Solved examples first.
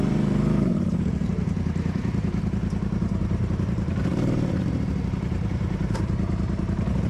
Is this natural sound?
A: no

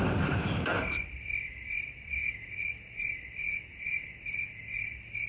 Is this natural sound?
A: yes